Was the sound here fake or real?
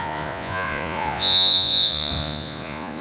fake